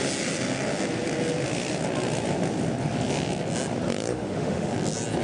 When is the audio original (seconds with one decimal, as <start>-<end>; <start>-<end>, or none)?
0.0-4.1; 4.7-5.2